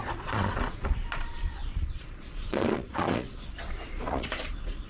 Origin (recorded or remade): remade